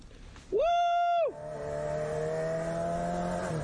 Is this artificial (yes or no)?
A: no